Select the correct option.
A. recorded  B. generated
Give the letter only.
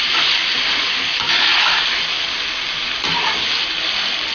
A